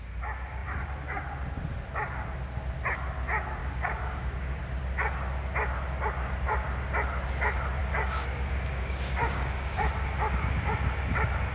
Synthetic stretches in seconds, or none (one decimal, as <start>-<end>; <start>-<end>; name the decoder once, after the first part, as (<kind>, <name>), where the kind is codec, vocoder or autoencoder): 3.6-4.6 (codec, DAC); 7.8-9.8